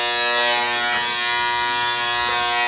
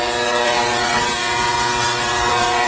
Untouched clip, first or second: first